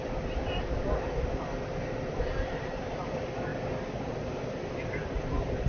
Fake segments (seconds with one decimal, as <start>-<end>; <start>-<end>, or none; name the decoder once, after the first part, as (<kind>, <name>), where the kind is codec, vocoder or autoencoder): 0.0-3.5 (vocoder, BigVGAN v2); 4.6-5.7

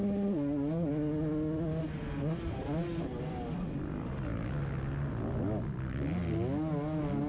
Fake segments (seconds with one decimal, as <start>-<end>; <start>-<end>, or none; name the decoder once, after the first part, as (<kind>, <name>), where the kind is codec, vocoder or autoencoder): none

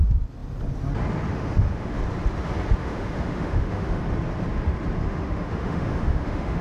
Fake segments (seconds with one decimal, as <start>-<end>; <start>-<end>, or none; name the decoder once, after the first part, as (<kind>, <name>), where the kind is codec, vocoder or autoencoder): 1.3-2.0 (autoencoder, DAC-VAE); 2.8-4.0; 5.0-6.6

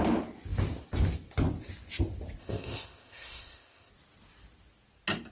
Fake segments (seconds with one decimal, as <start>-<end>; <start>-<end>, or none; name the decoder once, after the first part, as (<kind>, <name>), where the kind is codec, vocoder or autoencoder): 2.4-3.9 (codec, ZipCodec)